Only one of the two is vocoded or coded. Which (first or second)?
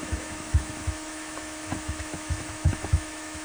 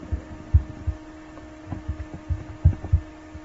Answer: first